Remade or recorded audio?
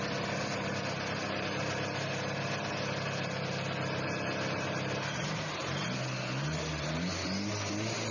recorded